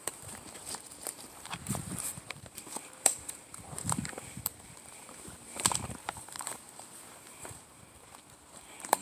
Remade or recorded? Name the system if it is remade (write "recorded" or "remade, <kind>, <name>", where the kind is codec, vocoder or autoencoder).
remade, vocoder, BigVGAN v2